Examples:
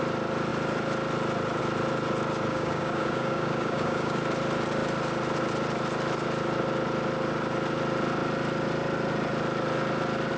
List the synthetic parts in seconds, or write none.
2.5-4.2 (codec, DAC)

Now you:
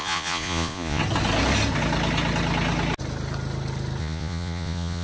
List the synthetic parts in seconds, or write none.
0.0-1.0 (vocoder, Vocos); 4.0-5.0